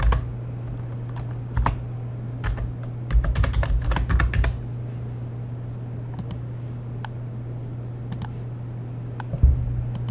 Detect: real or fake real